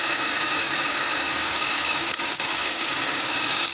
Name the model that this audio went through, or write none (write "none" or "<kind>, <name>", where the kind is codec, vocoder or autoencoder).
codec, DAC